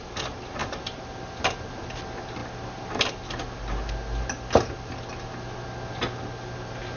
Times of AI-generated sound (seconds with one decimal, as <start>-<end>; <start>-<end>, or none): none